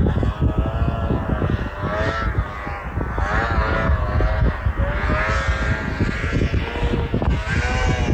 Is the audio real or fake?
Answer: real